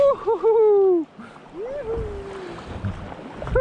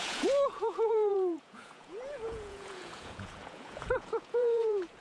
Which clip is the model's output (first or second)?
second